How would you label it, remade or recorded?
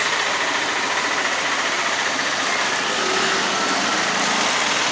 recorded